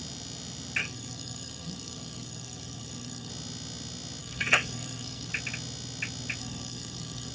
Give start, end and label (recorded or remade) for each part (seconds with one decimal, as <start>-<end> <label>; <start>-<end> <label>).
0.0-0.8 recorded; 0.8-3.3 remade; 3.3-4.2 recorded; 4.2-5.3 remade; 5.3-6.4 recorded; 6.4-7.3 remade